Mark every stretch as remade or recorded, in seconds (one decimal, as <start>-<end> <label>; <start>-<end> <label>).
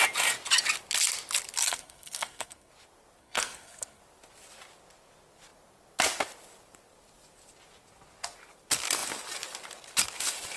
0.0-1.6 recorded; 1.6-2.7 remade; 2.7-3.2 recorded; 3.2-4.0 remade; 4.0-10.6 recorded